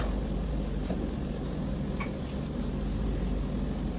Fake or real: real